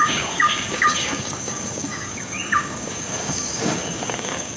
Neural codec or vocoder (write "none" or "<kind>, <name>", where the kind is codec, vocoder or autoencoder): codec, DAC